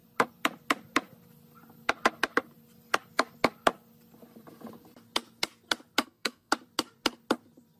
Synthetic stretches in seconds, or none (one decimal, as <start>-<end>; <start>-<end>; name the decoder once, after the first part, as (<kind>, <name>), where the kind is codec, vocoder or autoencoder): 6.0-6.5 (codec, SNAC)